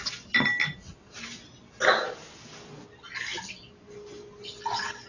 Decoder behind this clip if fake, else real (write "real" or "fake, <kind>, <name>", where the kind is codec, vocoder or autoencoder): real